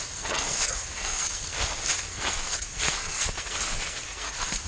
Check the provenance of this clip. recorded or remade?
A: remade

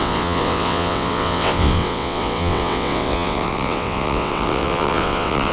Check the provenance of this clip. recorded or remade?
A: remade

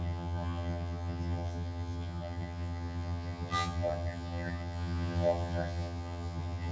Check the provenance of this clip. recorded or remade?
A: remade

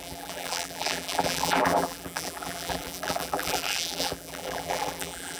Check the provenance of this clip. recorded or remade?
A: remade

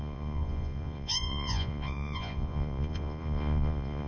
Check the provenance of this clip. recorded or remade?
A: remade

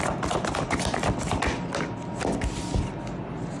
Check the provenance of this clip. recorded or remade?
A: recorded